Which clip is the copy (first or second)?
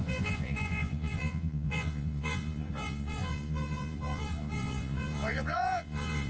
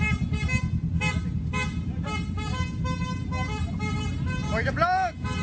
first